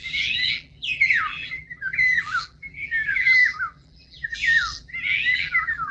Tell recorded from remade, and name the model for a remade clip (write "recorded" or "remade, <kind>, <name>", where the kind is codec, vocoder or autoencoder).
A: remade, vocoder, BigVGAN v2